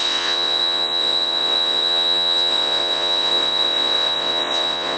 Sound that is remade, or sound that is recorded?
remade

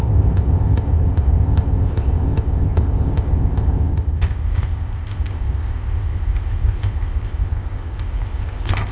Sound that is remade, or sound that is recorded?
remade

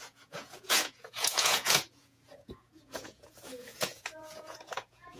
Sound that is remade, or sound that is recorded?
remade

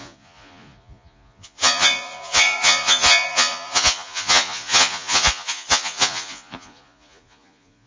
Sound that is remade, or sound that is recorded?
remade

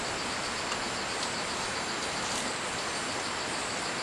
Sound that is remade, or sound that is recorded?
recorded